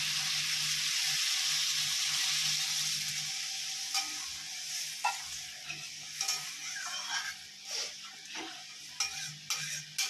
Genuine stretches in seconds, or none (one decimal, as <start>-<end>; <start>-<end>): 0.0-10.1